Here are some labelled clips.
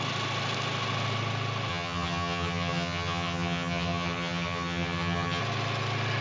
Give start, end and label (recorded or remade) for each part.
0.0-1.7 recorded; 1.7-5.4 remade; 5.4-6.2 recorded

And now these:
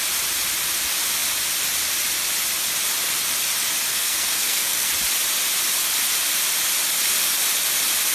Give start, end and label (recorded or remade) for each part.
0.0-3.9 recorded; 3.9-4.9 remade; 4.9-8.1 recorded

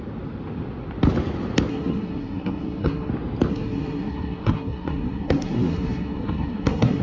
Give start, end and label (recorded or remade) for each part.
0.0-1.7 recorded; 1.7-3.1 remade; 3.1-3.5 recorded; 3.5-7.0 remade

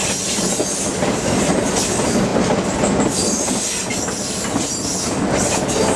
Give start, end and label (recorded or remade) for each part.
0.0-6.0 recorded

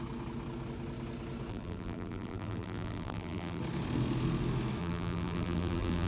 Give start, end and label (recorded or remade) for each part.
0.0-1.5 recorded; 1.5-3.6 remade; 3.6-4.8 recorded; 4.8-6.1 remade

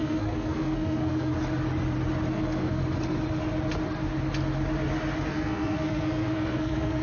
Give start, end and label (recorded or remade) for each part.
0.0-1.3 remade; 1.3-2.3 recorded; 2.3-2.8 remade; 2.8-5.3 recorded; 5.3-7.0 remade